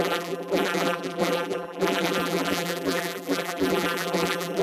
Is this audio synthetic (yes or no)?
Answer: yes